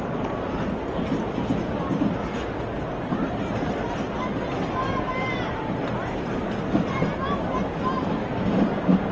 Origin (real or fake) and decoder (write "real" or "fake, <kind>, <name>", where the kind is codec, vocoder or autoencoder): real